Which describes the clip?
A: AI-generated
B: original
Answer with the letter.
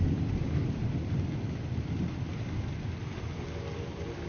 B